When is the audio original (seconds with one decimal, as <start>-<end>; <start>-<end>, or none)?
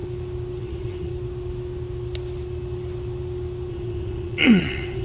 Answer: 0.0-0.6; 1.1-3.7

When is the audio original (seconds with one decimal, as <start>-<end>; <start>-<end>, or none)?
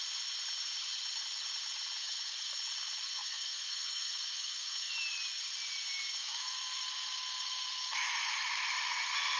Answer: 0.0-2.0; 2.6-3.2; 4.9-6.2; 8.7-9.4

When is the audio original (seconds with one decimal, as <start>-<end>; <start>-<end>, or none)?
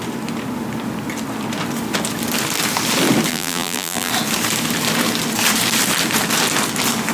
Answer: 0.0-3.3; 4.1-7.1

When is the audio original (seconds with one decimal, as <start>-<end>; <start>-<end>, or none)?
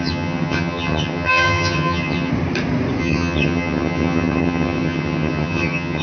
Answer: 2.3-3.0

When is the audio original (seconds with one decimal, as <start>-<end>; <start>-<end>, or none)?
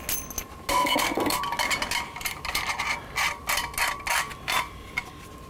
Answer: 0.0-0.8; 1.4-5.5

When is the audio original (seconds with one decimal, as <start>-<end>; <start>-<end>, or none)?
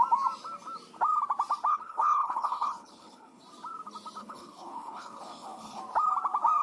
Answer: 0.0-1.7; 3.4-4.2; 5.8-6.6